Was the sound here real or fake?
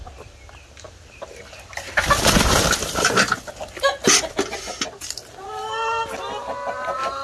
real